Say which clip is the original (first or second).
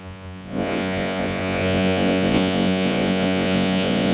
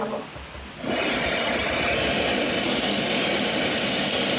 second